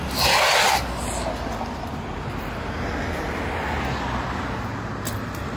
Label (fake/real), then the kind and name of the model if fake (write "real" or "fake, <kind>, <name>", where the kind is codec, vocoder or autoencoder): real